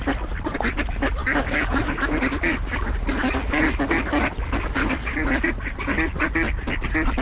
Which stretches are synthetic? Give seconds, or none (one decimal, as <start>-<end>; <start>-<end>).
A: 1.2-2.0; 4.8-5.5